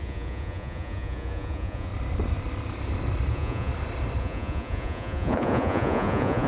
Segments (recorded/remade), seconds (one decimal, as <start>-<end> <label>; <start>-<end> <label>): 0.0-1.9 remade; 1.9-3.3 recorded; 3.3-3.7 remade; 3.7-4.2 recorded; 4.2-6.5 remade